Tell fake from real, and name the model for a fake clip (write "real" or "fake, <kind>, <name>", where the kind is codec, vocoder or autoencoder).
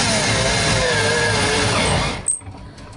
real